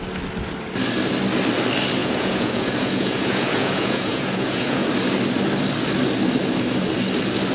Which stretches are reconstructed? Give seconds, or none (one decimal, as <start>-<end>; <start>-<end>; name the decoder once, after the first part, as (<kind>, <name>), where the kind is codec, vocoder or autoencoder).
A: 2.0-4.9 (vocoder, Vocos)